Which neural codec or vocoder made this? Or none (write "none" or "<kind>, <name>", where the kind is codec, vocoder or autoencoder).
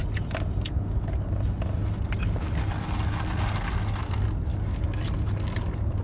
none